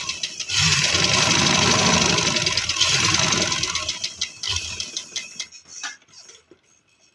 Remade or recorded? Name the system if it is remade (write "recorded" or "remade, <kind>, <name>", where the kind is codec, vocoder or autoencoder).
recorded